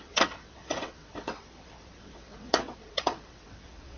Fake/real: fake